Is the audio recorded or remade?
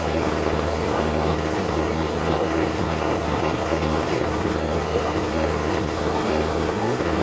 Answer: remade